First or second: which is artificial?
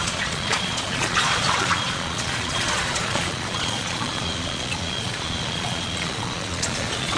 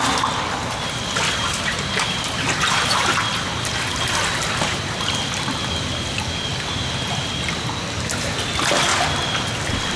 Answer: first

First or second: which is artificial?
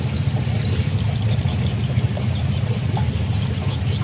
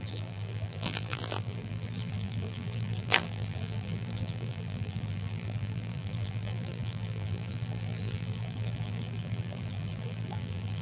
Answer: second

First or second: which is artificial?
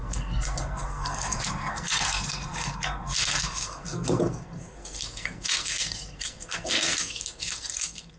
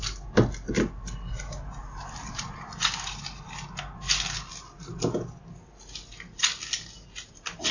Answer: first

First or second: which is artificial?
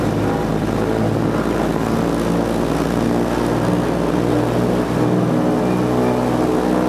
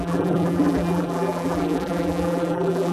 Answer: second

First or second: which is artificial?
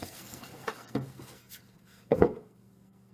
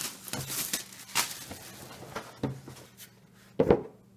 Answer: first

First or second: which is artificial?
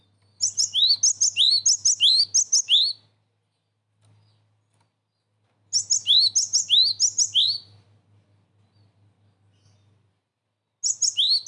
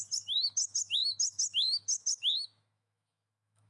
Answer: second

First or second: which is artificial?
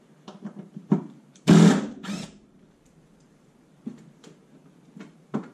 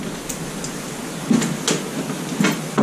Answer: first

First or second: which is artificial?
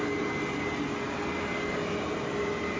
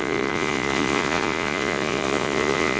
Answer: second